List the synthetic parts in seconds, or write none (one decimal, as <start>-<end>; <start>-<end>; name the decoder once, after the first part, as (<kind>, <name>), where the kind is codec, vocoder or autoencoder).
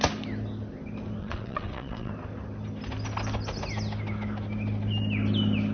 1.2-2.1 (vocoder, WaveNeXt)